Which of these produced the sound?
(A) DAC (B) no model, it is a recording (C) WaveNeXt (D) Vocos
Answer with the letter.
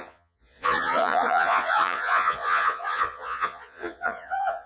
D